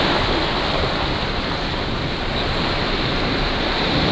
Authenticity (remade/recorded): remade